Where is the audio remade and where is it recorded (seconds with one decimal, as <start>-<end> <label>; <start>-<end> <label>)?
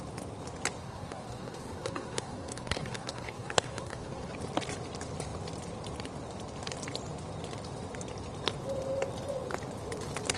0.0-0.8 recorded; 0.8-4.3 remade; 4.3-10.4 recorded